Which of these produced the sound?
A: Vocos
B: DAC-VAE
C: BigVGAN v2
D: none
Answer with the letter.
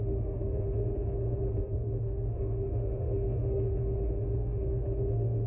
B